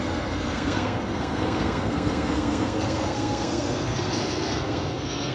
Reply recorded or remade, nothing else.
remade